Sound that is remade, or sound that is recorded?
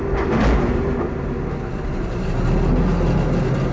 recorded